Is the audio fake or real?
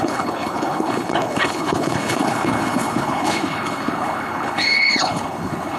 fake